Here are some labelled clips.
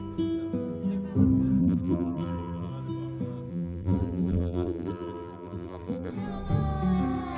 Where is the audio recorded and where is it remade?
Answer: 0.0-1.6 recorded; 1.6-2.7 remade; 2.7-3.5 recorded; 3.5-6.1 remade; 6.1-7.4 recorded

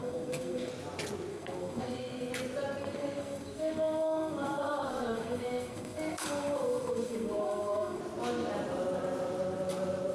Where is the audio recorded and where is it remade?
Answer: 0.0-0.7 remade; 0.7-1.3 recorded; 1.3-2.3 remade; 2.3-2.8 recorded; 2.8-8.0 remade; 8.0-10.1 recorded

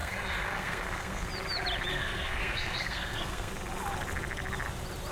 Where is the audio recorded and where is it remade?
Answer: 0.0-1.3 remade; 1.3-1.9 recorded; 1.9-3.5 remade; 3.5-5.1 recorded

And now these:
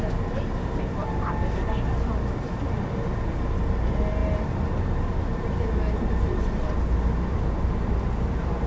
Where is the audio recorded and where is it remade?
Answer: 0.0-8.7 recorded

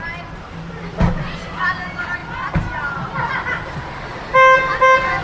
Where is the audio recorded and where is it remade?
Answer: 0.0-5.2 recorded

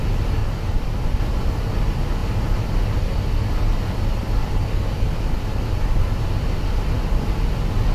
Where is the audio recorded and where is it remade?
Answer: 0.0-0.4 recorded; 0.4-1.2 remade; 1.2-2.2 recorded; 2.2-3.0 remade; 3.0-4.2 recorded; 4.2-6.4 remade; 6.4-7.9 recorded